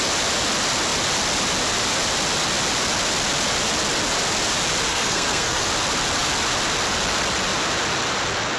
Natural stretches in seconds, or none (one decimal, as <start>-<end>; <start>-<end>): 0.0-4.9; 5.7-8.6